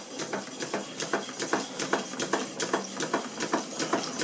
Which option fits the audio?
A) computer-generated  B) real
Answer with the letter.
B